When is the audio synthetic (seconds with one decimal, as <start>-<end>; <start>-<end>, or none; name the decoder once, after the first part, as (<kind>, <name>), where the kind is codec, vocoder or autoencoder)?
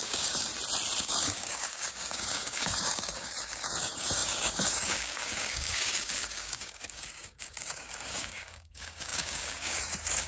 0.0-0.5 (codec, DAC); 1.0-10.3